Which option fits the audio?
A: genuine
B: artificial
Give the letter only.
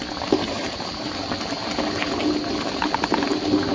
A